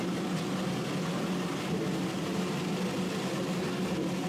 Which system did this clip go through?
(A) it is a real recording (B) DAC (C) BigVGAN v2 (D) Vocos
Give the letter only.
A